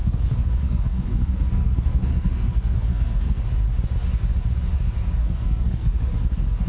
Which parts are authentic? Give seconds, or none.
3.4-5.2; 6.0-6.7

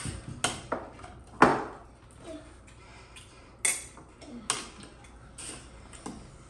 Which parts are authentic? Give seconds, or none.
0.0-6.5

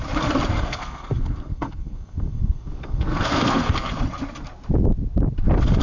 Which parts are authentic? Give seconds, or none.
0.0-0.5; 4.0-5.8

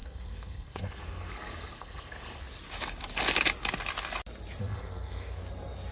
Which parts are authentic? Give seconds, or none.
2.4-4.6; 5.4-5.9

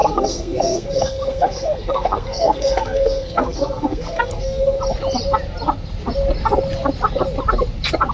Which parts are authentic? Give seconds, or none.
4.8-8.1

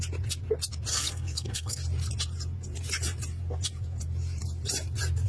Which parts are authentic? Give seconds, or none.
0.0-0.9; 1.8-5.3

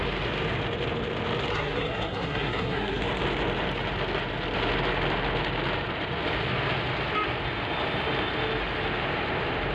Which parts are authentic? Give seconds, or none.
0.0-1.5; 3.0-9.7

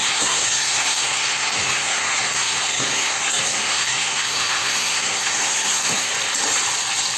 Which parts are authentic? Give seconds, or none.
6.1-7.2